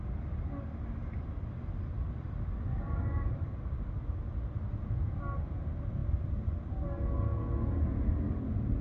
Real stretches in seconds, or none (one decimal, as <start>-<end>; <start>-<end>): 0.0-8.8